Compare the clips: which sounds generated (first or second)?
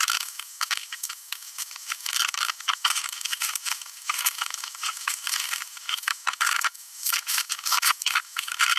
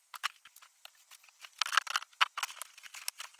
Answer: first